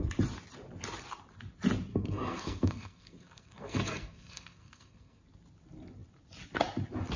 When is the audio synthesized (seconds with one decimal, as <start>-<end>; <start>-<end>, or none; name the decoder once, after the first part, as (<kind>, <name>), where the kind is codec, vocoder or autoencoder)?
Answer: 1.9-5.2 (codec, SNAC)